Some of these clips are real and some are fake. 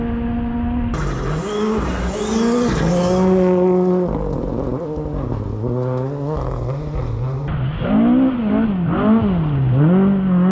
real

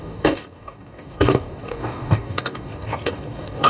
fake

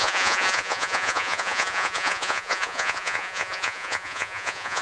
fake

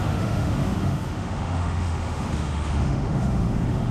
fake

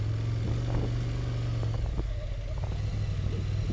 real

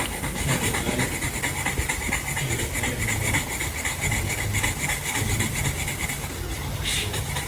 real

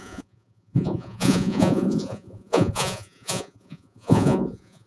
fake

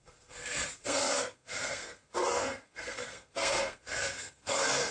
fake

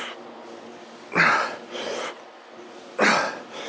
real